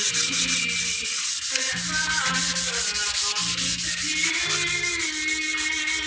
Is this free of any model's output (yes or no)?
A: yes